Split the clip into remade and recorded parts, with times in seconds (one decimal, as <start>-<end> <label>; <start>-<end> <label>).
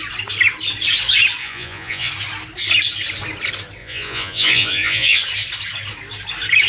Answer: 0.0-1.4 recorded; 1.4-2.1 remade; 2.1-3.8 recorded; 3.8-5.2 remade; 5.2-6.7 recorded